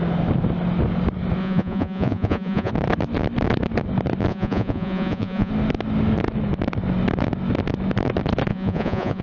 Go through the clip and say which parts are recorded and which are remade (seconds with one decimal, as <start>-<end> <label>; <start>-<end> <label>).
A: 0.0-1.4 recorded; 1.4-2.7 remade; 2.7-4.3 recorded; 4.3-5.5 remade; 5.5-8.5 recorded; 8.5-9.2 remade